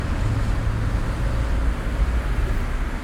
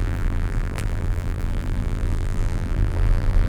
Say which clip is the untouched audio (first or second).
first